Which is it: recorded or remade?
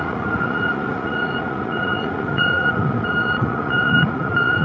remade